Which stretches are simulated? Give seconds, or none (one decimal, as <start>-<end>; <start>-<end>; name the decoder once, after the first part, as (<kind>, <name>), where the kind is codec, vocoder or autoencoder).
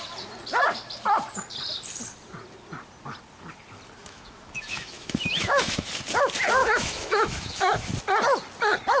4.0-5.9 (autoencoder, DAC-VAE); 6.6-7.9